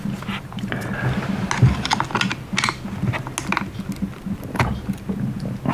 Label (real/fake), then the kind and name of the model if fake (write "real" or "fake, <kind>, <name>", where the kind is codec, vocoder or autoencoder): real